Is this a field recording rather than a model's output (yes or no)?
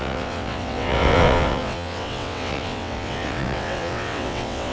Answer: no